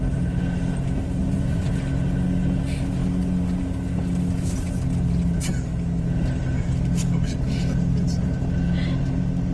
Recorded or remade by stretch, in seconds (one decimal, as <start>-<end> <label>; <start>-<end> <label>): 0.0-1.2 recorded; 1.2-1.7 remade; 1.7-9.5 recorded